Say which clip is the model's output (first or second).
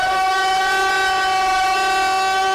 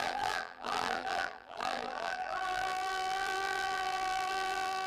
second